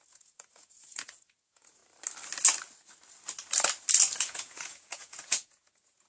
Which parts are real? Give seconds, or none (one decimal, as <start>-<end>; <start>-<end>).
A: 1.8-4.2